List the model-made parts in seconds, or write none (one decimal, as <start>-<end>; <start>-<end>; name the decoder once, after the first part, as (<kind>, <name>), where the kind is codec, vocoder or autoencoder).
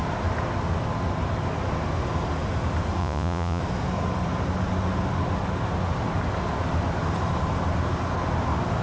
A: 3.0-3.6 (vocoder, Vocos)